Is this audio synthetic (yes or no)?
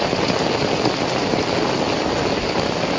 no